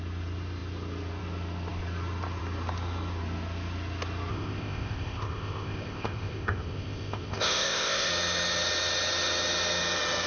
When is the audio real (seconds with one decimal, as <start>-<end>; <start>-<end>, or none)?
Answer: 0.0-4.3; 8.1-10.3